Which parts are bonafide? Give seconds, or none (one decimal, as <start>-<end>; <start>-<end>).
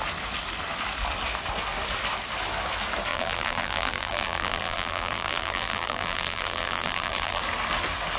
0.0-3.1; 7.4-8.2